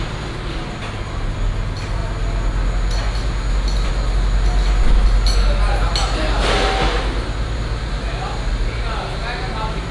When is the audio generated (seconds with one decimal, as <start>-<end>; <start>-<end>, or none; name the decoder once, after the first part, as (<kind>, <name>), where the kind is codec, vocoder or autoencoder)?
none